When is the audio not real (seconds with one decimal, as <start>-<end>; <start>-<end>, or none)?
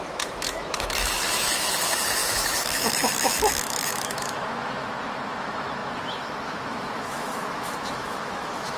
0.0-8.8